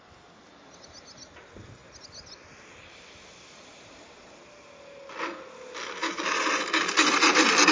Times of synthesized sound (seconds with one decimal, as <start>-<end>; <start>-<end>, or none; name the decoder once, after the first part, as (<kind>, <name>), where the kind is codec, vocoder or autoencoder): none